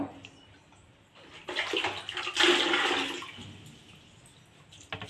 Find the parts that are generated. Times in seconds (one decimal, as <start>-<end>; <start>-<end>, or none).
none